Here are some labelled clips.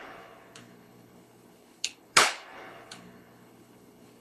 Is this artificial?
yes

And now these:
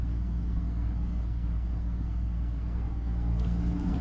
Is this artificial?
yes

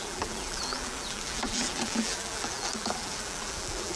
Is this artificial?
yes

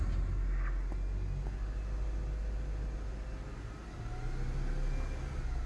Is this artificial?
no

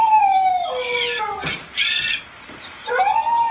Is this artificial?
no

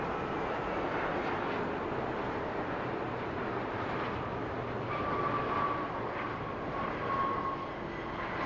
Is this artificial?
no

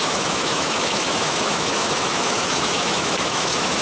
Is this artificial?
yes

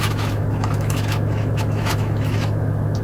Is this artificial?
yes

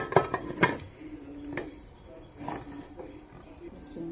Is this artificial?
no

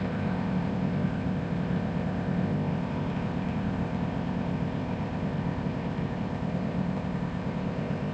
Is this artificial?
yes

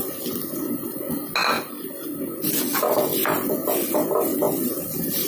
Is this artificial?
no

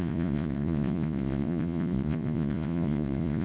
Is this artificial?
yes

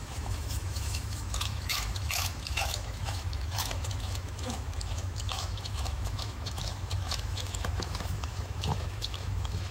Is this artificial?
yes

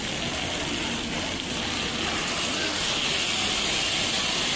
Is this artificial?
no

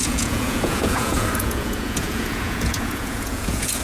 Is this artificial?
yes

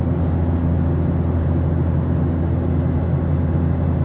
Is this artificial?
no